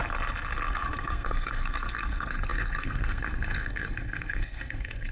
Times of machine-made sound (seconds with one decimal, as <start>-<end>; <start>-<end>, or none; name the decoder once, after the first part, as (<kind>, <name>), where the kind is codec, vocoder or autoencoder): 0.7-5.1 (codec, SNAC)